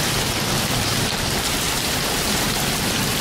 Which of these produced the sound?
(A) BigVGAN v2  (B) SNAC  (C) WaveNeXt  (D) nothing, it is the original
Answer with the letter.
D